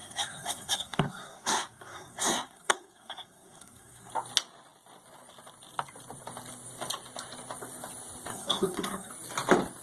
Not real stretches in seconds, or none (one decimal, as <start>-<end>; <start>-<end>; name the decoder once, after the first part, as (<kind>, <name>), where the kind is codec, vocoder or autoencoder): 0.0-4.1 (codec, SNAC); 8.3-9.1